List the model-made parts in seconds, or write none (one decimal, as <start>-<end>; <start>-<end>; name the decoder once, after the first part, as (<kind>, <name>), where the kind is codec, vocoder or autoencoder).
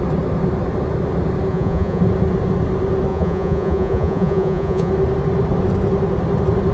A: 1.5-2.0 (vocoder, Vocos); 3.1-4.9